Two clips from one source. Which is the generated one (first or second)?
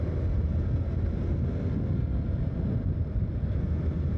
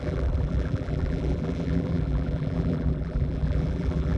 second